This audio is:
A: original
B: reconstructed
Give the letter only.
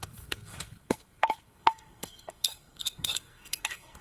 B